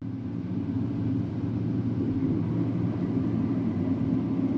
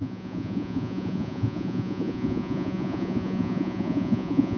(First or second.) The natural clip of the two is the first